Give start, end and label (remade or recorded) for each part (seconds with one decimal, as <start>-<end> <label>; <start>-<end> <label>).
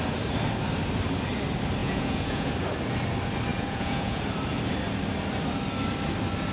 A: 0.0-1.8 recorded; 1.8-2.5 remade; 2.5-3.5 recorded; 3.5-4.2 remade; 4.2-6.5 recorded